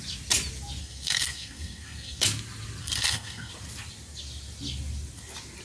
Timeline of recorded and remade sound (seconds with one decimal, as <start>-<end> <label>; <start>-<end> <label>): 0.0-0.8 recorded; 0.8-2.2 remade; 2.2-2.8 recorded; 2.8-3.5 remade; 3.5-5.6 recorded